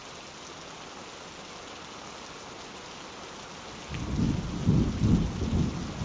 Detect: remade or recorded recorded